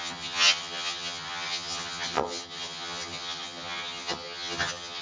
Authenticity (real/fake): fake